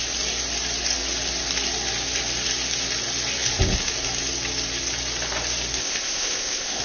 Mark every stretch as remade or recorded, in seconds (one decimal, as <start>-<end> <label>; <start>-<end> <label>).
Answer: 0.0-5.8 recorded; 5.8-6.8 remade